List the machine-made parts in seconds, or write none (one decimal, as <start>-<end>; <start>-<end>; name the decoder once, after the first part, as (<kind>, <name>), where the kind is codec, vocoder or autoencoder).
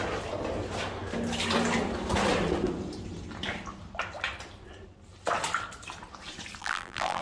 6.6-7.2 (vocoder, BigVGAN v2)